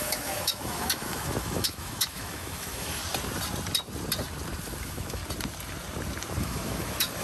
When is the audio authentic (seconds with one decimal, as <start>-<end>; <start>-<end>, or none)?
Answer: 3.0-4.8; 5.2-6.4